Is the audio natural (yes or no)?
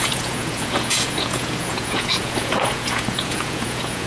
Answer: no